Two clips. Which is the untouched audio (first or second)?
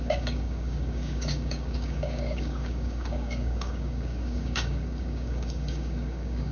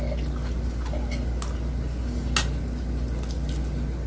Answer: second